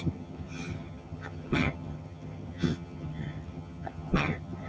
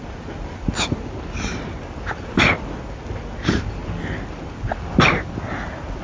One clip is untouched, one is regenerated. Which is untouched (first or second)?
second